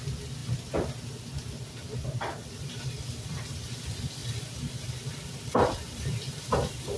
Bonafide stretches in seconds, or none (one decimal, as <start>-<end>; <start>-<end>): 0.0-4.2; 6.3-7.0